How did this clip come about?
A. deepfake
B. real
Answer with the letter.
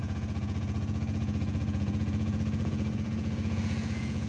A